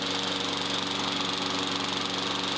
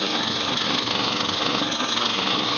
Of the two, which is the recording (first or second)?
first